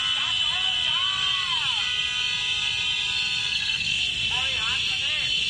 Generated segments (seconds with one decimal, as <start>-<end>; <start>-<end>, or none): 3.4-4.0